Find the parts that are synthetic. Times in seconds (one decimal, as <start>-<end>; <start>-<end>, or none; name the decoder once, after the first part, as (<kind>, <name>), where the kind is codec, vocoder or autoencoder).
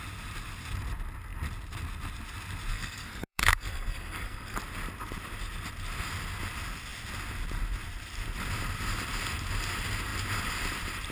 2.7-4.6 (codec, SNAC)